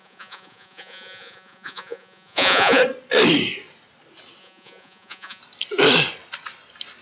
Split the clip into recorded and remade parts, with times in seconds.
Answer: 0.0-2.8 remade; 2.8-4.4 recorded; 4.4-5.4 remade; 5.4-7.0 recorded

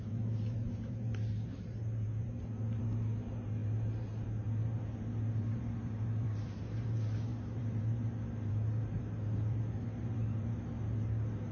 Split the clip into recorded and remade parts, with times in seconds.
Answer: 0.0-11.5 remade

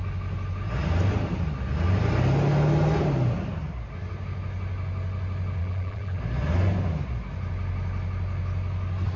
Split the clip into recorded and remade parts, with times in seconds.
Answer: 0.0-5.6 recorded; 5.6-6.2 remade; 6.2-9.2 recorded

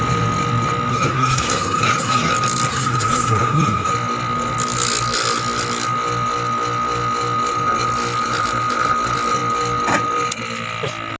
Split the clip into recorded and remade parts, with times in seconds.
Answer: 0.0-0.9 recorded; 0.9-2.3 remade; 2.3-2.7 recorded; 2.7-3.9 remade; 3.9-11.2 recorded

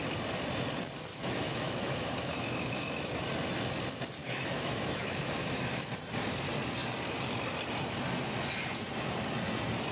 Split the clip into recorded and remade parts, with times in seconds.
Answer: 0.0-1.1 recorded; 1.1-3.2 remade; 3.2-4.2 recorded; 4.2-5.9 remade; 5.9-9.9 recorded